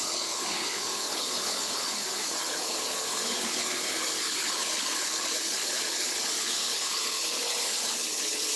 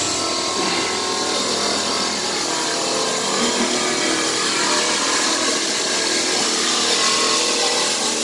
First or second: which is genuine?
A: second